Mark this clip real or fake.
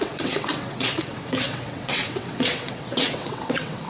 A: fake